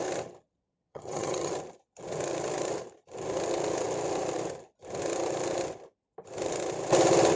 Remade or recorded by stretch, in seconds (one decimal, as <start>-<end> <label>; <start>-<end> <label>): 0.0-0.9 recorded; 0.9-1.5 remade; 1.5-7.4 recorded